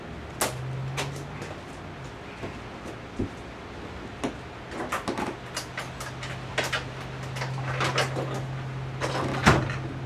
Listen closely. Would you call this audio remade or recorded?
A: recorded